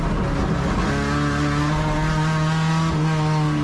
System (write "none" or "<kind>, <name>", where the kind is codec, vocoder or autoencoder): none